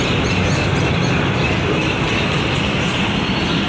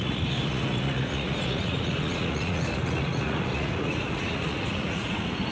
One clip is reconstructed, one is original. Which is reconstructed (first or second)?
second